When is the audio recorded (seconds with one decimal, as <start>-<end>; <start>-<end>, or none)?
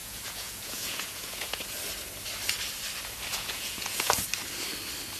1.6-3.3; 4.1-5.2